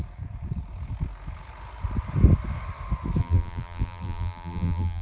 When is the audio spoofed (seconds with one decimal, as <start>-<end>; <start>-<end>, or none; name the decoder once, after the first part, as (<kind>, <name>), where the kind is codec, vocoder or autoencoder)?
3.2-5.0 (vocoder, BigVGAN v2)